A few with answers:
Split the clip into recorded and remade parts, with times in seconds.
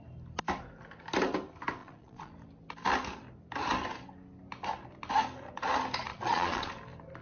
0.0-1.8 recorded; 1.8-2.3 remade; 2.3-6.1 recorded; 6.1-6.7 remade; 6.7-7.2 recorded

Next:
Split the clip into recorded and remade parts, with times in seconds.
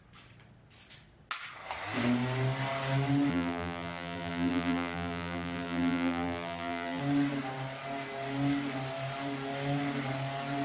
0.0-3.3 recorded; 3.3-7.0 remade; 7.0-10.6 recorded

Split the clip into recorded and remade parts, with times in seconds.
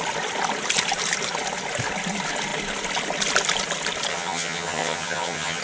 0.0-4.1 recorded; 4.1-5.6 remade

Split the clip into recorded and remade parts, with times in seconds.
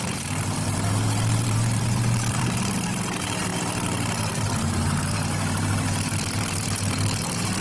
0.0-3.5 remade; 3.5-4.6 recorded; 4.6-7.6 remade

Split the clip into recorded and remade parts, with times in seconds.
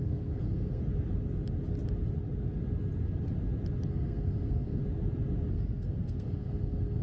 0.0-0.8 remade; 0.8-3.9 recorded; 3.9-4.8 remade; 4.8-5.5 recorded; 5.5-7.0 remade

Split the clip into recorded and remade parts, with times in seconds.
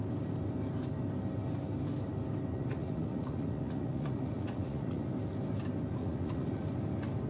0.0-2.5 recorded; 2.5-5.1 remade; 5.1-6.0 recorded; 6.0-6.6 remade; 6.6-7.3 recorded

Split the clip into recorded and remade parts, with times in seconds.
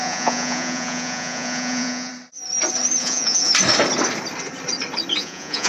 0.0-2.1 remade; 2.1-3.0 recorded; 3.0-3.5 remade; 3.5-5.2 recorded; 5.2-5.7 remade